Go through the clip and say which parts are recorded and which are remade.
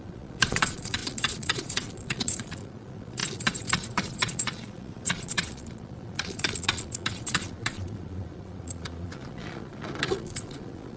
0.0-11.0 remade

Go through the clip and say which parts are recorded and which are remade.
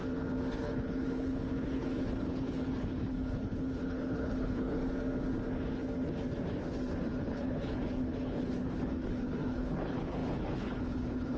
0.0-0.6 recorded; 0.6-4.8 remade; 4.8-7.0 recorded; 7.0-11.4 remade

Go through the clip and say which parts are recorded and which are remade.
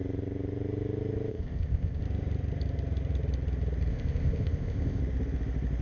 0.0-1.3 recorded; 1.3-2.0 remade; 2.0-3.9 recorded; 3.9-5.0 remade; 5.0-5.8 recorded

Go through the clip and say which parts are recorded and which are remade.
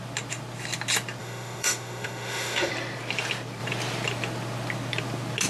0.0-1.2 recorded; 1.2-2.7 remade; 2.7-5.5 recorded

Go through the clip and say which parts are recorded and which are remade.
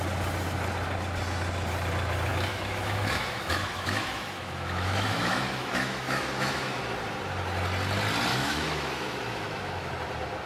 0.0-2.3 recorded; 2.3-6.8 remade; 6.8-8.3 recorded; 8.3-9.9 remade; 9.9-10.5 recorded